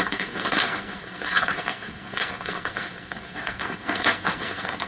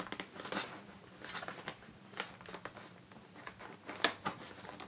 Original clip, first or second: second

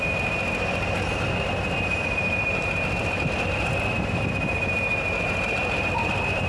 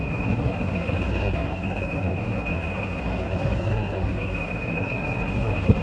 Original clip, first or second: first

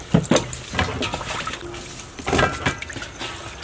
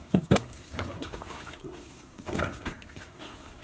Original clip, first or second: first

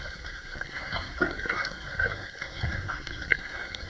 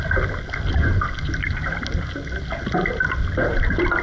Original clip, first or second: second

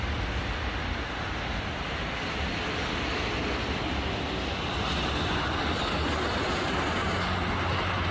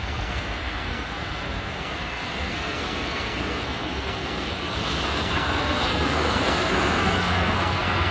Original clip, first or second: first